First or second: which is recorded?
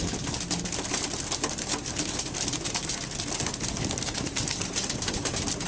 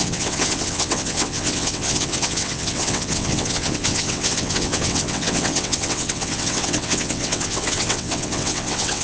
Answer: first